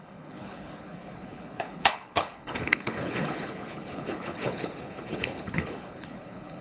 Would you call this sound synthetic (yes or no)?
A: yes